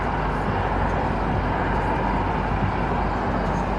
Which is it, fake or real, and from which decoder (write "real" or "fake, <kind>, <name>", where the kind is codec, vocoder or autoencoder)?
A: real